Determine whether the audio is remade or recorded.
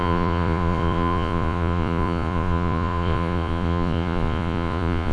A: remade